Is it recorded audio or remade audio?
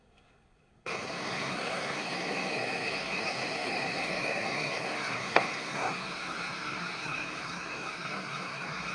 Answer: remade